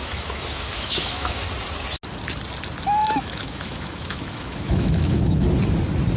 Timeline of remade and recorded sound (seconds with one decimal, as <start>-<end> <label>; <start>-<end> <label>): 0.0-1.4 remade; 1.4-3.0 recorded; 3.0-5.4 remade; 5.4-6.2 recorded